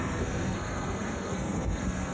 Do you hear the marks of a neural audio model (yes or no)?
yes